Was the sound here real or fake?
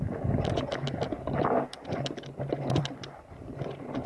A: real